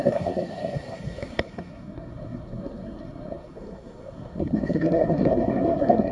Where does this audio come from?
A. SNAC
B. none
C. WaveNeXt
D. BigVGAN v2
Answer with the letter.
A